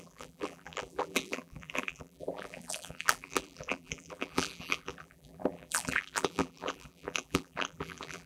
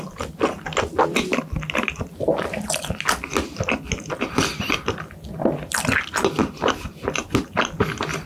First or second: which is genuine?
second